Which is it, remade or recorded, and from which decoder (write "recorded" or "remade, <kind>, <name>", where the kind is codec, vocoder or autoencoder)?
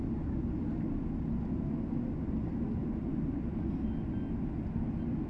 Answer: recorded